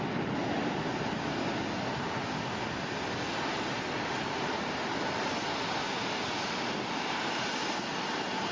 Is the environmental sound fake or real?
real